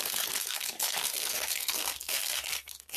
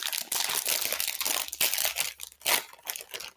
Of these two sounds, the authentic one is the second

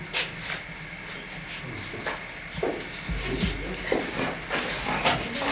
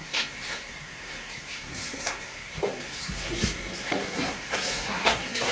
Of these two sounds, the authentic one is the first